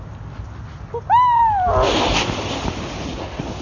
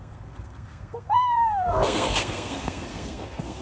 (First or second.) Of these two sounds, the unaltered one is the first